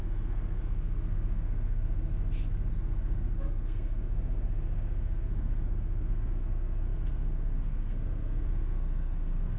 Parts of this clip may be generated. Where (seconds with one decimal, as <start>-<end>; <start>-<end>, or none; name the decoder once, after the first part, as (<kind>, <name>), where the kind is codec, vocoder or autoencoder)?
0.0-2.1 (codec, SNAC); 2.7-9.6